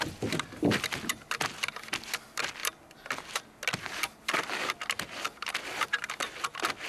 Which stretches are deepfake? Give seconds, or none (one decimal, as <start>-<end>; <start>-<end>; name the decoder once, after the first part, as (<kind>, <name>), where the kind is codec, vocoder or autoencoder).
none